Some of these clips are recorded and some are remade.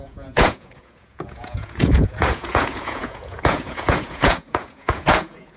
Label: remade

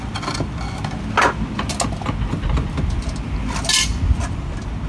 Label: recorded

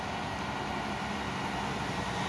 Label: recorded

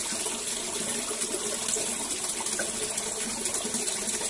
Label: recorded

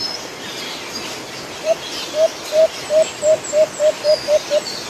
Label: recorded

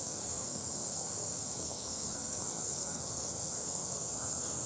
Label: remade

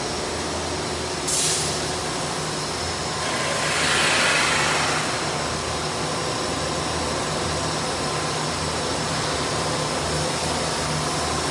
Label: recorded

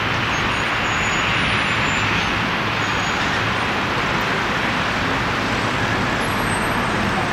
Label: recorded